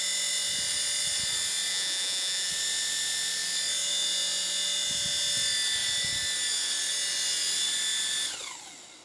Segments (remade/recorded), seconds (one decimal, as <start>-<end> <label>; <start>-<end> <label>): 0.0-1.7 recorded; 1.7-2.5 remade; 2.5-9.0 recorded